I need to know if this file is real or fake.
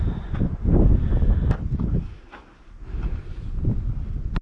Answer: real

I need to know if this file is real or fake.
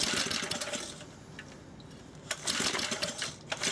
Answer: real